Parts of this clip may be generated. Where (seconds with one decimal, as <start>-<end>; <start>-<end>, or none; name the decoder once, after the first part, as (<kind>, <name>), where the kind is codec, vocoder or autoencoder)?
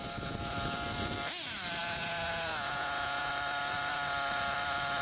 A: 1.8-3.3 (vocoder, Vocos)